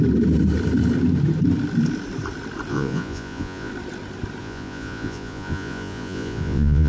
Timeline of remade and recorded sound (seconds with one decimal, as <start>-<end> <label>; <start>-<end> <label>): 0.0-2.7 recorded; 2.7-3.7 remade; 3.7-4.4 recorded; 4.4-6.9 remade